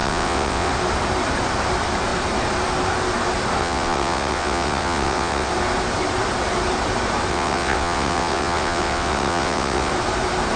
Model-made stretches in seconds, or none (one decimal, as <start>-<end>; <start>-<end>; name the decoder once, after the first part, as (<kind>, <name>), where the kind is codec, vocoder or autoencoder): 0.0-0.7 (vocoder, WaveNeXt); 3.6-5.5; 7.3-9.9